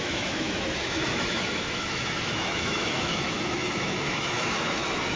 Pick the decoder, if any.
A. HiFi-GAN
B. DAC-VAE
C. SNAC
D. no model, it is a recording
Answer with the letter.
B